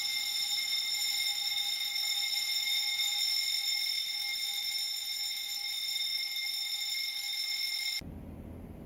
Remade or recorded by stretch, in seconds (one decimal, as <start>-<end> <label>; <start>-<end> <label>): 0.0-8.9 recorded